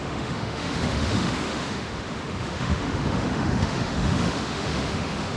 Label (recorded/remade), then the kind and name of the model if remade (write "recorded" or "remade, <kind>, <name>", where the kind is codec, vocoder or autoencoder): remade, autoencoder, DAC-VAE